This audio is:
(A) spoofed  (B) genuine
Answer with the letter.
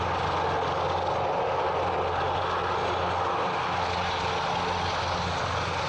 B